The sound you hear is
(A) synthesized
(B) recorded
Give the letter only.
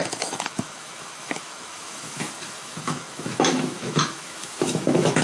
A